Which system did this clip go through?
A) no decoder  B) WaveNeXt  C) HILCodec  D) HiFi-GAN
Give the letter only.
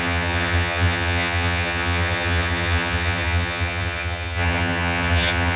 D